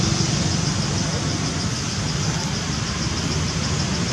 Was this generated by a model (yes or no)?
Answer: no